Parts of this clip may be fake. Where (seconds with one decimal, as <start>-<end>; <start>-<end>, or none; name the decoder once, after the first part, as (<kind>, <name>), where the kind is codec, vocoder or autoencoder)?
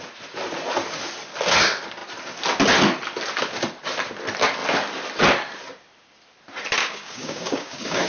6.8-8.1 (codec, DAC)